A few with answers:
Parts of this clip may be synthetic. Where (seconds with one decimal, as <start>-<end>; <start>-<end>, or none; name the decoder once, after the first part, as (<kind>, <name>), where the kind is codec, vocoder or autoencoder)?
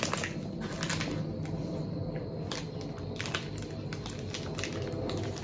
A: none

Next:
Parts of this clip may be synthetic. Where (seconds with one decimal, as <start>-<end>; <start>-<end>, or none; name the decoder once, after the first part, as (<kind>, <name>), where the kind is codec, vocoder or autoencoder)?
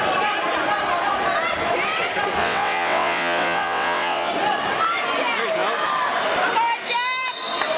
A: 2.4-4.3 (vocoder, WaveNeXt)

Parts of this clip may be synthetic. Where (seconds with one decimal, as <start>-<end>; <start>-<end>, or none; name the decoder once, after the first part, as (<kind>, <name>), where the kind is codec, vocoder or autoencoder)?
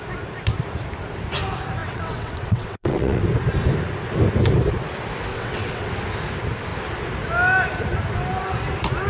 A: 1.8-3.2 (vocoder, WaveNeXt); 5.3-5.9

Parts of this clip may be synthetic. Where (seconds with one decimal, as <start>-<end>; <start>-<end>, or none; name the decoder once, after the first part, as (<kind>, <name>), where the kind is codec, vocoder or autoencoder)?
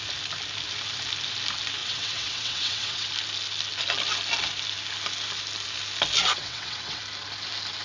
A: 1.8-3.1 (vocoder, WaveNeXt); 6.4-7.0